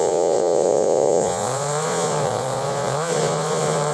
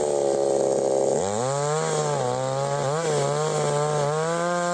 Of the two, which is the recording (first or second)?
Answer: second